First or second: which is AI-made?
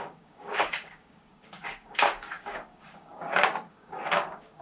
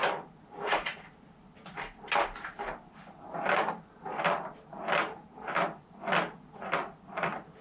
first